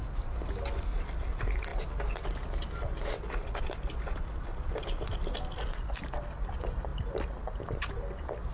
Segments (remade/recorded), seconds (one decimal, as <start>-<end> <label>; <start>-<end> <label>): 0.0-1.2 recorded; 1.2-1.7 remade; 1.7-3.6 recorded; 3.6-8.5 remade